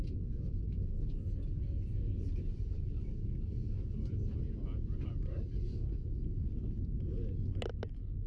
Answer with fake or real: real